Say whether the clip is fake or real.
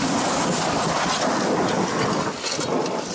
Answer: real